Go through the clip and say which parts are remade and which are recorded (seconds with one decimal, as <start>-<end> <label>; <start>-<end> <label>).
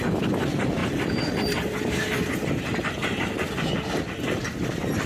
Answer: 0.0-5.1 recorded